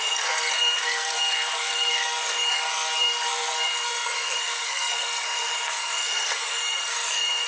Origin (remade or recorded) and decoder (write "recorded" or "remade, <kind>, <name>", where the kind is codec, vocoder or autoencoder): remade, codec, SNAC